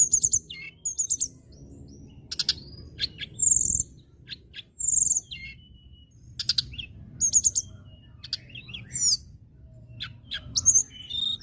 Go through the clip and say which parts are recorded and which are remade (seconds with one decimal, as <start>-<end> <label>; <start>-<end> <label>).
0.0-11.4 recorded